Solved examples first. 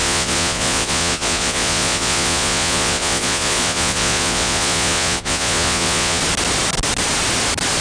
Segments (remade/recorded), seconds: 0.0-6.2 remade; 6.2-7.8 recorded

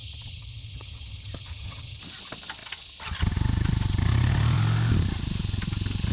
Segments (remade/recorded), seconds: 0.0-2.0 remade; 2.0-6.1 recorded

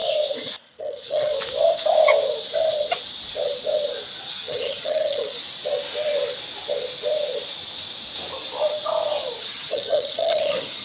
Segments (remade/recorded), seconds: 0.0-0.8 recorded; 0.8-1.3 remade; 1.3-4.3 recorded; 4.3-5.4 remade; 5.4-9.4 recorded; 9.4-10.8 remade

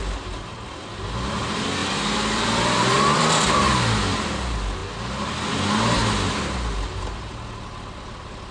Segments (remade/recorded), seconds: 0.0-1.8 recorded; 1.8-3.5 remade; 3.5-8.5 recorded

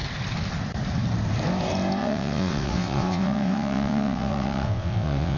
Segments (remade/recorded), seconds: 0.0-2.0 recorded; 2.0-5.4 remade

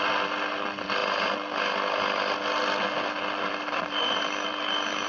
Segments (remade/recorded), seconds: 0.0-1.0 remade; 1.0-3.4 recorded; 3.4-5.1 remade